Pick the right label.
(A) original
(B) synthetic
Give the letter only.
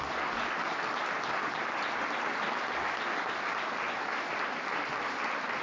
A